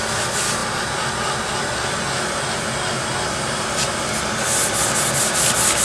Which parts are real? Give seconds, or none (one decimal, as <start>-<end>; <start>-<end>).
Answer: 0.0-5.8

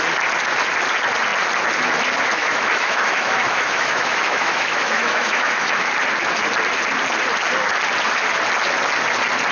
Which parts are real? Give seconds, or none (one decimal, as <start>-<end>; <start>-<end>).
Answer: 0.0-2.4; 5.9-9.5

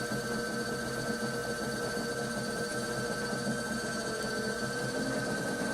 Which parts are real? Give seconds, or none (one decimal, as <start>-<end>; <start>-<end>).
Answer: 0.0-5.7

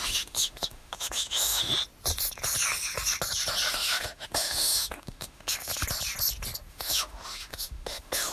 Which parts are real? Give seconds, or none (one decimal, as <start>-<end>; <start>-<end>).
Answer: 1.7-3.7; 5.7-6.7

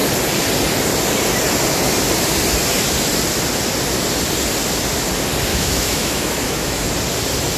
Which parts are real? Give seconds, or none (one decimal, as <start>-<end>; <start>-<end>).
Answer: 0.0-5.5; 6.8-7.6

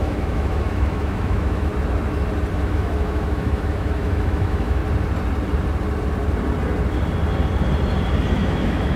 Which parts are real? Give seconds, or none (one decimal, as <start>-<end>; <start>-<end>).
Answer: 1.7-2.6; 4.8-8.3

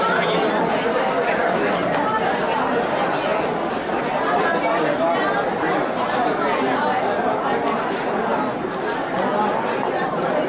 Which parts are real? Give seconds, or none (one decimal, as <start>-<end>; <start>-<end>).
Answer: 0.0-10.5

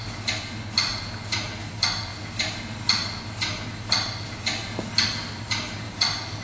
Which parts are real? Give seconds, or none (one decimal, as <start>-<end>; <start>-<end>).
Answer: 0.0-6.4